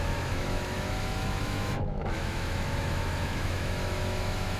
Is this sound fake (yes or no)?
yes